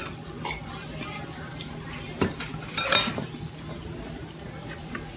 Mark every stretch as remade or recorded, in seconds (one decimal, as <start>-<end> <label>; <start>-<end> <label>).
0.0-5.2 recorded